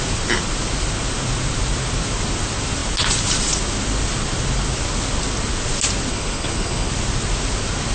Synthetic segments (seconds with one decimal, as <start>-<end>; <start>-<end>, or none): 6.1-6.9